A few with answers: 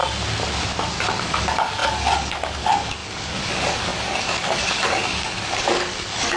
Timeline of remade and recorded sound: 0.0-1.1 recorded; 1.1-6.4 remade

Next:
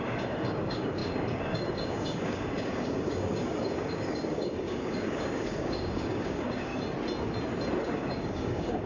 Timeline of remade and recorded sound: 0.0-6.7 remade; 6.7-7.8 recorded; 7.8-8.9 remade

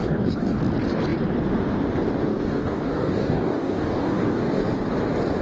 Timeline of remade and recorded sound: 0.0-0.6 remade; 0.6-2.3 recorded; 2.3-4.6 remade; 4.6-5.4 recorded

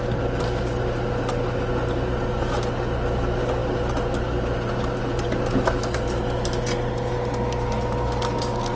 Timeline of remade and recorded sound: 0.0-8.8 recorded